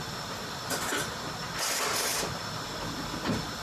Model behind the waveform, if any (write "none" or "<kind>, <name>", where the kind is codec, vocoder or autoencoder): none